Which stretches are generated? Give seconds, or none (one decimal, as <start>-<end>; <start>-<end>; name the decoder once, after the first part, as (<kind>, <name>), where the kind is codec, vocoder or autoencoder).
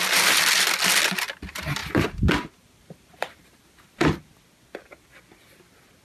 1.8-4.2 (vocoder, BigVGAN v2)